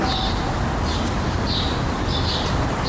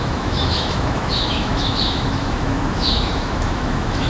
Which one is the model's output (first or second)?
second